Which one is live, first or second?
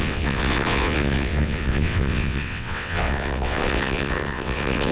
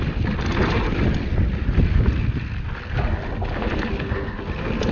second